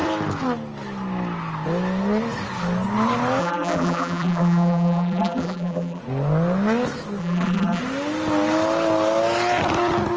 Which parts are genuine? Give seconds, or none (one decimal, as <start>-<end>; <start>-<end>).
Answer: 0.0-3.4; 6.0-7.2; 7.8-10.2